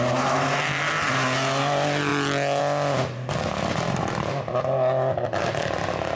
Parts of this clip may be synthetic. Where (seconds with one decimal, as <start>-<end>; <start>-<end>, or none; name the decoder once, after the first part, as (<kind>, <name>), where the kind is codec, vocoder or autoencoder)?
none